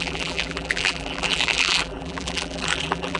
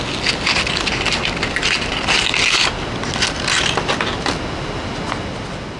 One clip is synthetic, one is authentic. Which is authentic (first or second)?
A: second